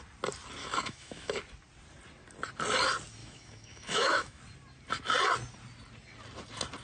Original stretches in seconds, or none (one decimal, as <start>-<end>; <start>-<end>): 0.0-0.6; 1.4-3.2; 4.4-6.8